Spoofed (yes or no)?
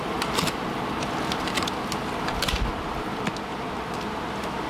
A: no